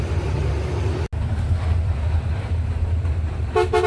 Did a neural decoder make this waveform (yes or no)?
no